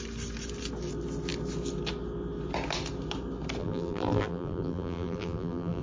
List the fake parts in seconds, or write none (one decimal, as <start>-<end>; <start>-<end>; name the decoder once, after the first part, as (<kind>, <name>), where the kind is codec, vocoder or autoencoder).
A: 3.6-5.8 (vocoder, BigVGAN v2)

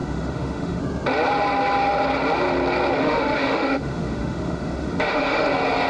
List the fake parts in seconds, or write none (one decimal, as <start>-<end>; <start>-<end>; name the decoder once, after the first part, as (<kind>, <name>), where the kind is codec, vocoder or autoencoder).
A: 0.0-0.8 (autoencoder, DAC-VAE); 3.0-5.5

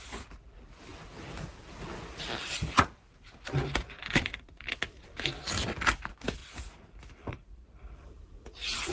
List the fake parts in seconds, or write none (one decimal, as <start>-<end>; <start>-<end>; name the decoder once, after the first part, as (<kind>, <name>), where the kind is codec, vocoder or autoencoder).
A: 0.0-6.4 (vocoder, BigVGAN v2); 7.3-8.9